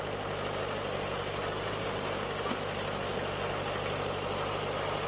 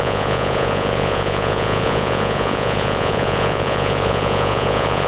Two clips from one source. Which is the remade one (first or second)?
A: second